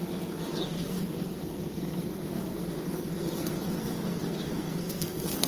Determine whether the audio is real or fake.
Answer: fake